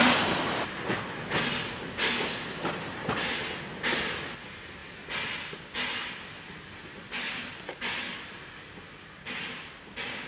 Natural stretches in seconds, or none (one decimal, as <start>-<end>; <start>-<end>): 0.0-10.3